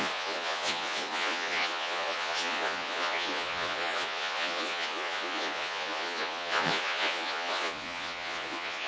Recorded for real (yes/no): no